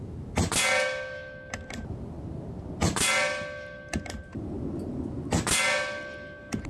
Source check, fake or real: real